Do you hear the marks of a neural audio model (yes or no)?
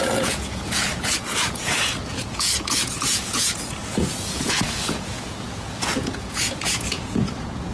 yes